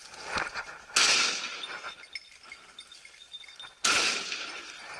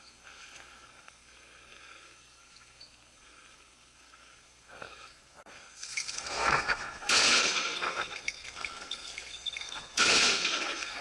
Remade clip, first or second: second